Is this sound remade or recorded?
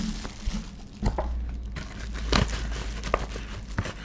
recorded